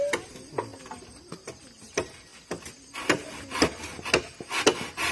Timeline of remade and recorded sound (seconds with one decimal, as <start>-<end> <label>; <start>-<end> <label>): 0.0-5.1 recorded